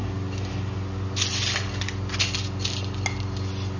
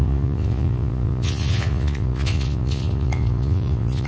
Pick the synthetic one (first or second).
second